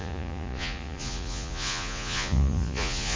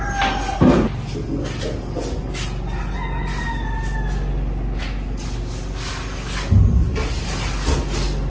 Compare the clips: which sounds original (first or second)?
second